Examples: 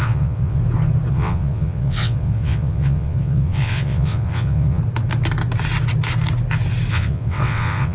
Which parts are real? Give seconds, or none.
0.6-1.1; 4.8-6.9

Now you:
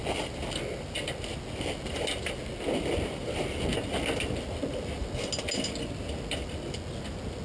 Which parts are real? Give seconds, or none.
0.0-7.4

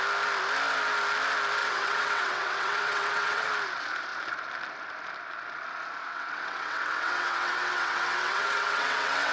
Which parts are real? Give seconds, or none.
0.0-1.6; 3.5-6.0

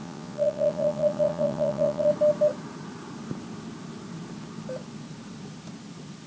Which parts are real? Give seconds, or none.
2.1-6.3

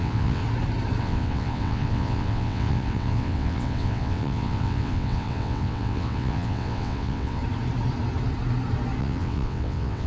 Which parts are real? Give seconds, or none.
0.4-1.0; 7.4-9.0

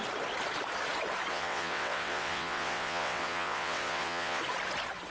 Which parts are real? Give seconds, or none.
0.0-1.3; 4.4-5.1

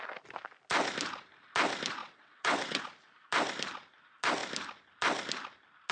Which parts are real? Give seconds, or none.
0.0-2.0; 2.8-5.9